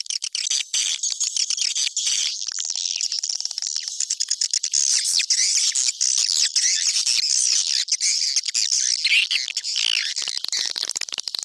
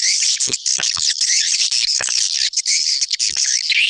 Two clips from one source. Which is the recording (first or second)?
first